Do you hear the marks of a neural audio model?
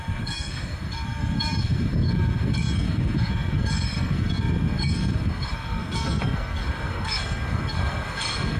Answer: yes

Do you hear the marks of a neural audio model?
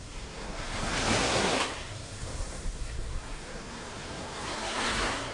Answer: yes